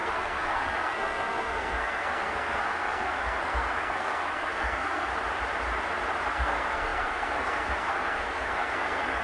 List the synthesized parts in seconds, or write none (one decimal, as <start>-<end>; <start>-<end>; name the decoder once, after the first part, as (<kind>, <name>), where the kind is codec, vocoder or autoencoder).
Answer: 0.0-5.1 (codec, SNAC); 6.3-9.2